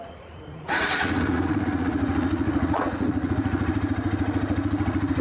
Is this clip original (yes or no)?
no